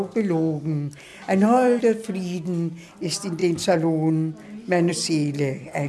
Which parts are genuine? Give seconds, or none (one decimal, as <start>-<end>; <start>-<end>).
0.0-1.1; 1.8-5.9